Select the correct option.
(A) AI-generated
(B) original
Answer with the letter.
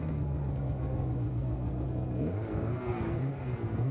A